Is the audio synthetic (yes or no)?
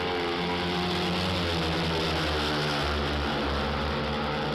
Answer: no